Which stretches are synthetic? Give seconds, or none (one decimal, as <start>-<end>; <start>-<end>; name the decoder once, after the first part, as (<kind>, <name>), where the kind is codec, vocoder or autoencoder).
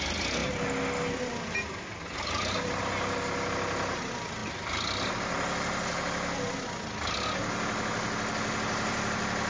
none